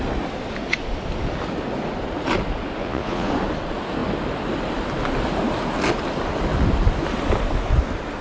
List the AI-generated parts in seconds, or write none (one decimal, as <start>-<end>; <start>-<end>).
2.8-3.3